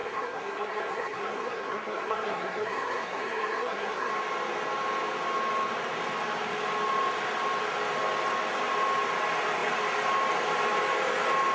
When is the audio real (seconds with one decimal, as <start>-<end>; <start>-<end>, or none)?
4.1-11.5